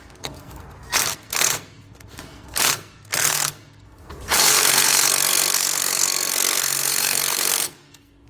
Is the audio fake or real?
fake